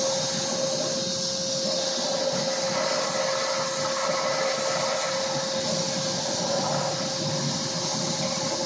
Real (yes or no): yes